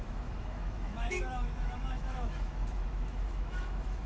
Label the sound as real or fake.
fake